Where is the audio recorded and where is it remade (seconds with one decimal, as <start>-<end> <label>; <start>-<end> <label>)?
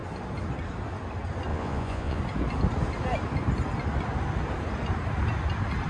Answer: 0.0-1.5 recorded; 1.5-2.2 remade; 2.2-5.9 recorded